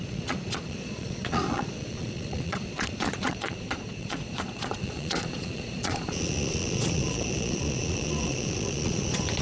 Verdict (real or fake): fake